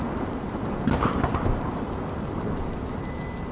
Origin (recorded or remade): recorded